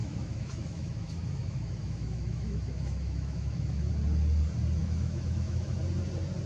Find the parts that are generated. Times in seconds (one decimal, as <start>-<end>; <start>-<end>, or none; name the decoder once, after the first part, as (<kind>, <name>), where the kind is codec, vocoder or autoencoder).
0.0-3.9 (autoencoder, DAC-VAE); 4.8-5.8